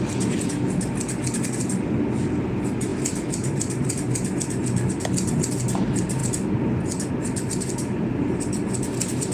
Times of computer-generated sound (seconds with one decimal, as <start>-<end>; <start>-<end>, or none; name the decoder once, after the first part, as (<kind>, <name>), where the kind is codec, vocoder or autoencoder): none